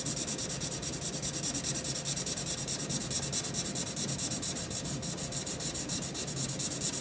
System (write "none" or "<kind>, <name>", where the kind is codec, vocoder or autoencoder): none